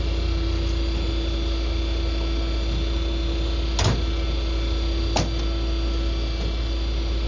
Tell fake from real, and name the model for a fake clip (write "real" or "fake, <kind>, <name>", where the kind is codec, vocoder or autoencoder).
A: real